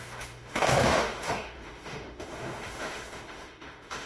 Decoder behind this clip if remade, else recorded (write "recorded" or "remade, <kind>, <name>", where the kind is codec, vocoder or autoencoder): remade, autoencoder, DAC-VAE